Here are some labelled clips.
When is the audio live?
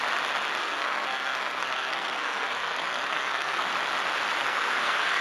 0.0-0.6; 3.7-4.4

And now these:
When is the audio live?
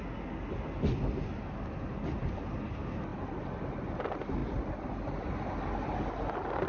0.0-6.7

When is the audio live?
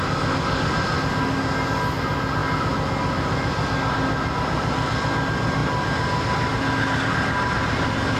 0.0-8.2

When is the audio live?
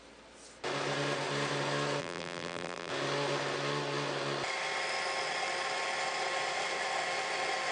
0.0-2.0; 2.9-7.7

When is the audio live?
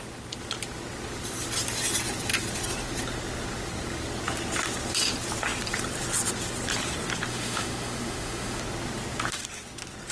0.0-7.3; 8.6-10.1